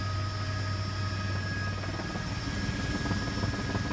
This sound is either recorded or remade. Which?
recorded